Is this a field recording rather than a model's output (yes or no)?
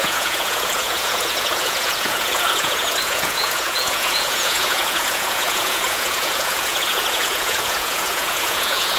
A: no